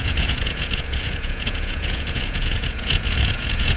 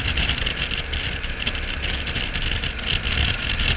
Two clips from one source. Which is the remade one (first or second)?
first